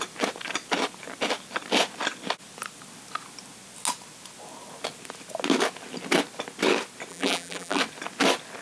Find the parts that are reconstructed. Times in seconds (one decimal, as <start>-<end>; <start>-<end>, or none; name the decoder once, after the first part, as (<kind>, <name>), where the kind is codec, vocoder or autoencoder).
7.1-7.8 (vocoder, BigVGAN v2)

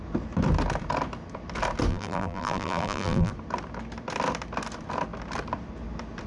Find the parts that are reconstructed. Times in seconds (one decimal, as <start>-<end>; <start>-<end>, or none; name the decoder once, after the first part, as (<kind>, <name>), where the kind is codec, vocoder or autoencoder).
1.9-3.3 (vocoder, BigVGAN v2)

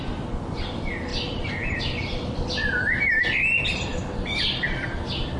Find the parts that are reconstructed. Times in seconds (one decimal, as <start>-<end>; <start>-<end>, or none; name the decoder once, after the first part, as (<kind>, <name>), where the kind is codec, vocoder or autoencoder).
1.1-1.8 (vocoder, BigVGAN v2); 3.9-4.9